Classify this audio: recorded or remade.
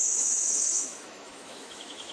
remade